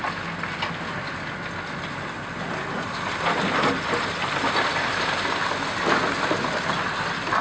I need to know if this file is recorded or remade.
recorded